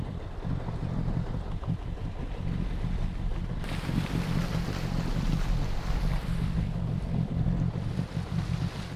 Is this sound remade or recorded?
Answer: recorded